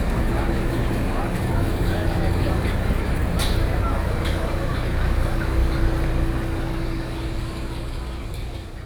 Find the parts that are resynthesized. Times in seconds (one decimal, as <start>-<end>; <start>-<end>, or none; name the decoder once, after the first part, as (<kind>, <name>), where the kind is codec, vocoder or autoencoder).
0.0-3.2 (codec, DAC); 3.8-5.6; 6.2-8.9